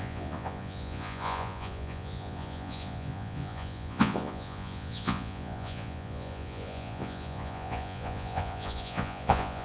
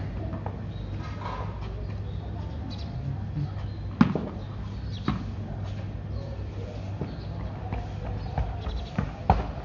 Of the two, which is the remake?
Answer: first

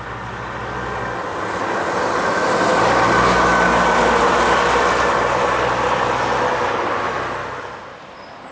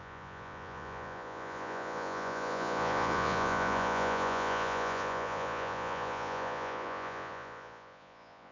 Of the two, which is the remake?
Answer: second